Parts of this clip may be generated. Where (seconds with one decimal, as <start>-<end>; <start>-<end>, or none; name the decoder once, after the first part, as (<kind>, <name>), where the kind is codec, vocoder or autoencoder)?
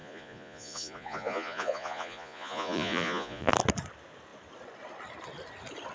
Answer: 0.0-3.5 (vocoder, Vocos)